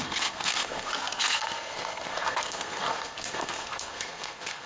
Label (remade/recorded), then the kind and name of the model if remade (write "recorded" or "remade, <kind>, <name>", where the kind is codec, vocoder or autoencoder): remade, codec, SNAC